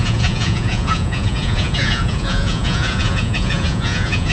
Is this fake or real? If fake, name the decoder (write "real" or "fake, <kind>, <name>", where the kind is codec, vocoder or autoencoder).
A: fake, vocoder, Vocos